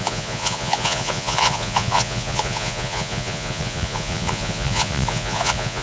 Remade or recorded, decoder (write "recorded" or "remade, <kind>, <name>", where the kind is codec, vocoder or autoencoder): remade, vocoder, Vocos